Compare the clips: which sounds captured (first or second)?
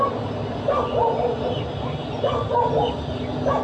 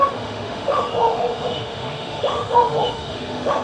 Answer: first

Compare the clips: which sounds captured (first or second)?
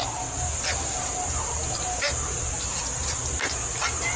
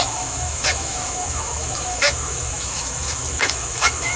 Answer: first